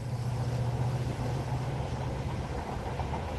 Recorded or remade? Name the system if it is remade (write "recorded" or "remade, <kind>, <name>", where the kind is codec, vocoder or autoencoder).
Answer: recorded